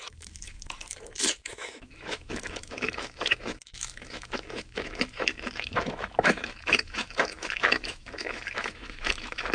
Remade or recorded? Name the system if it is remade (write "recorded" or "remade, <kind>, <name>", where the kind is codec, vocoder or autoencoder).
remade, autoencoder, DAC-VAE